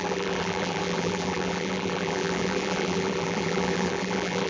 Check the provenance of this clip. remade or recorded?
remade